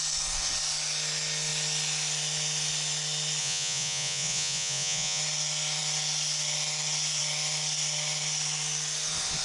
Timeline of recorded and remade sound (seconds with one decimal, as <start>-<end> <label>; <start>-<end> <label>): 0.0-3.4 recorded; 3.4-5.2 remade; 5.2-9.4 recorded